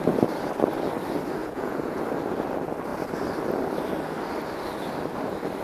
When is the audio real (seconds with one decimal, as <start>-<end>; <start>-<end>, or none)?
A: 0.0-1.4; 2.0-5.6